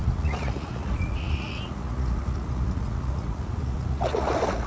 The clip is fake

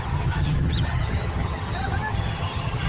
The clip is fake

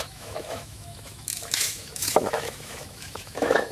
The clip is fake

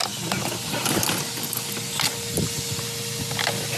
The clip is real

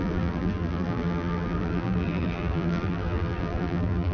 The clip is fake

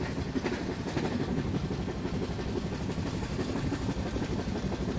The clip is real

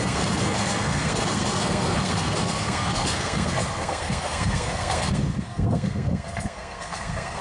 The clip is fake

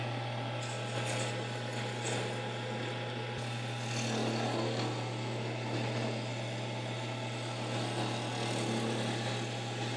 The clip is real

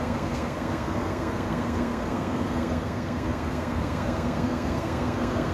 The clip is fake